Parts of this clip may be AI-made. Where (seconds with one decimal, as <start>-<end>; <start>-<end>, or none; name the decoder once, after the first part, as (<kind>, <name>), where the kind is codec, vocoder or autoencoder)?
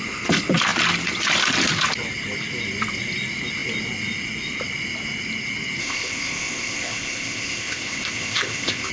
5.8-8.9 (codec, ZipCodec)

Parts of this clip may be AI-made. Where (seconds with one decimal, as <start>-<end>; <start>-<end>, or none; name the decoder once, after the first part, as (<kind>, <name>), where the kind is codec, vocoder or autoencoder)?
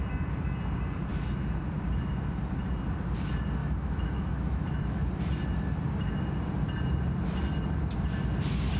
3.6-5.1 (autoencoder, DAC-VAE)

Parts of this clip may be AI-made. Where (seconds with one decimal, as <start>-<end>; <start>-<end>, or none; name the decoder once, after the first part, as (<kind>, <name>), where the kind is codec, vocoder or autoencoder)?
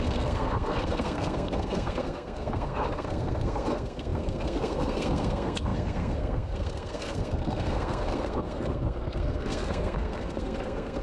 0.0-11.0 (codec, SNAC)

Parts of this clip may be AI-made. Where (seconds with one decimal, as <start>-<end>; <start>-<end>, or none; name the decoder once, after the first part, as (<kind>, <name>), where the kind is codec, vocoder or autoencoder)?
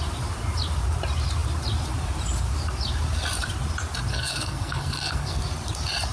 4.1-5.4 (codec, SNAC)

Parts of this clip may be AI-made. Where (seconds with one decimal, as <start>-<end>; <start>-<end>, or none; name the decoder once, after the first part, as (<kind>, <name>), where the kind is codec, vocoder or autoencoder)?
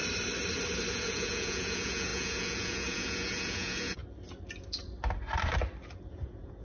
0.9-4.0 (vocoder, Vocos); 6.1-6.6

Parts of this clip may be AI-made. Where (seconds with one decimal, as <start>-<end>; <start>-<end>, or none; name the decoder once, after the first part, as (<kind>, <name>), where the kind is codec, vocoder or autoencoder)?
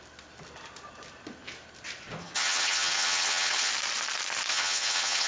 2.2-3.7 (vocoder, HiFi-GAN); 4.5-5.3